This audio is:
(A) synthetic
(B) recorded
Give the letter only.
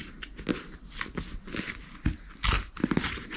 B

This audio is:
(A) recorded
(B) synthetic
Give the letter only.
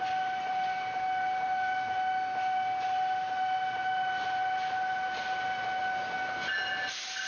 A